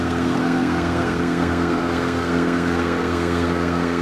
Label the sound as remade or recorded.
remade